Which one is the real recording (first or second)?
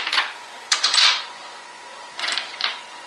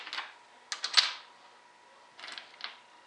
second